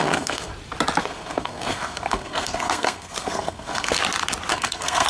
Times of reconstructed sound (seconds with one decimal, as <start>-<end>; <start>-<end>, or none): 0.0-0.5; 1.0-4.0; 4.5-5.1